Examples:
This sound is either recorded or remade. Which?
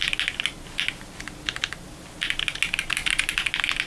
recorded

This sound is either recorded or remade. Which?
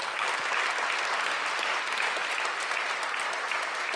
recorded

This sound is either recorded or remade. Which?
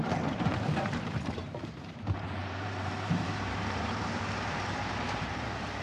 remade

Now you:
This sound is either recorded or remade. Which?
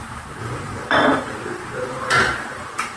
remade